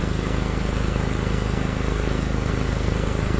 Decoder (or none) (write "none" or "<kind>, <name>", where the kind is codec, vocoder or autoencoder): codec, SNAC